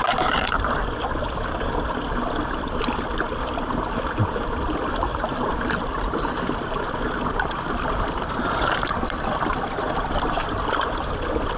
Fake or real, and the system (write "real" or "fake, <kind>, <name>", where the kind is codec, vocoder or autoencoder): fake, vocoder, BigVGAN v2